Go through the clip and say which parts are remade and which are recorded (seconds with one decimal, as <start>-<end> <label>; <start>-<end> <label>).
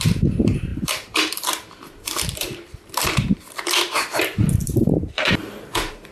0.0-6.1 remade